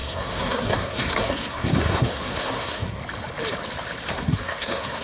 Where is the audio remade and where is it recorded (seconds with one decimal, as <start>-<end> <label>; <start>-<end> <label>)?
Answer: 0.0-3.0 remade; 3.0-4.1 recorded; 4.1-5.0 remade